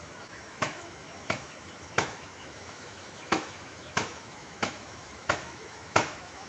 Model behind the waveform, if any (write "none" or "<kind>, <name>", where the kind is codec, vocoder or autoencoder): autoencoder, DAC-VAE